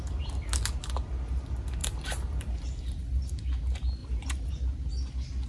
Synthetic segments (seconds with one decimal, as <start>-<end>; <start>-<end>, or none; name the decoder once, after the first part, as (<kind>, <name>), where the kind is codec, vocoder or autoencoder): 1.8-3.3 (vocoder, BigVGAN v2); 4.0-4.5